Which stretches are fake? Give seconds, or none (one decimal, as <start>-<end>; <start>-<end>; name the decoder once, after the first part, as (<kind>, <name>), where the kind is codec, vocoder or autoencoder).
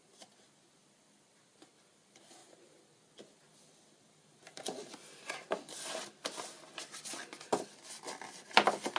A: none